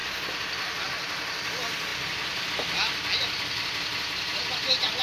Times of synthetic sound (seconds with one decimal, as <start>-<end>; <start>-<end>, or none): 0.0-0.8